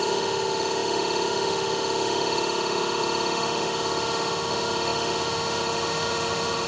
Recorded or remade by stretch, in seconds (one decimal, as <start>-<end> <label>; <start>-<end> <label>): 0.0-6.7 remade